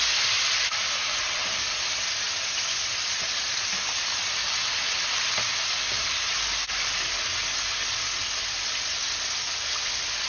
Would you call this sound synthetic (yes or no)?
no